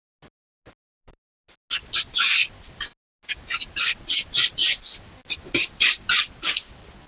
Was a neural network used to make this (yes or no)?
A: no